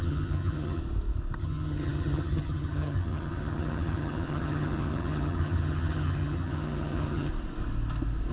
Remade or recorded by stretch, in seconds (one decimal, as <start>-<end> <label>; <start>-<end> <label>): 0.0-0.8 remade; 0.8-1.4 recorded; 1.4-7.3 remade; 7.3-8.3 recorded